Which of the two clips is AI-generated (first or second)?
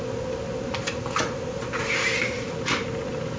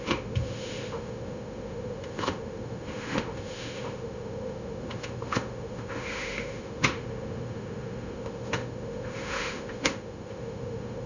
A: second